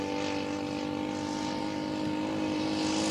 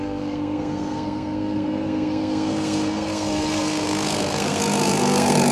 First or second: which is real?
first